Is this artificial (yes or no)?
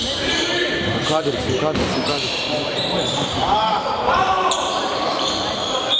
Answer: yes